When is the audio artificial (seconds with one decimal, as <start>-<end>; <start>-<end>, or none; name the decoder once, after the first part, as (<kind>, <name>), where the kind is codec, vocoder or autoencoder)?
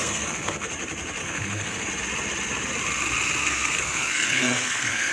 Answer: 0.0-0.7 (codec, SNAC); 1.2-1.9; 3.4-5.1